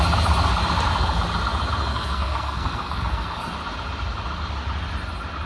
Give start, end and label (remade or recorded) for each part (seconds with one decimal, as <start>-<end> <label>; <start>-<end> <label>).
0.0-1.9 recorded; 1.9-3.5 remade; 3.5-5.5 recorded